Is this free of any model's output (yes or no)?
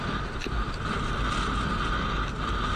yes